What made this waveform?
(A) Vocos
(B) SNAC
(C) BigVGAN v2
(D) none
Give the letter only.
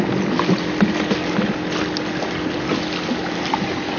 D